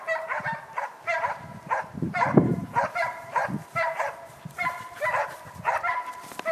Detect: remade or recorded remade